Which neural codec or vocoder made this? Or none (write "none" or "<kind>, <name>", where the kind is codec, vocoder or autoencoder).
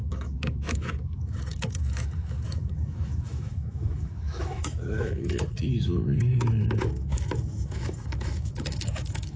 autoencoder, DAC-VAE